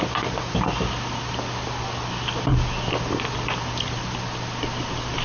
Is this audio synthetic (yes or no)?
no